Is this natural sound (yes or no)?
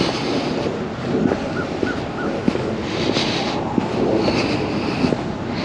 yes